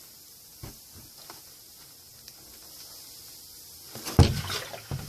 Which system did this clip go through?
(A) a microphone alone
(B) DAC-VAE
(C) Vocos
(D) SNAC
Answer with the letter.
A